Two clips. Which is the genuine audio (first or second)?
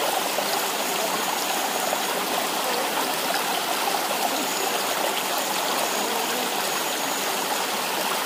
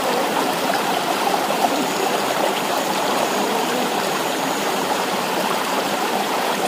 first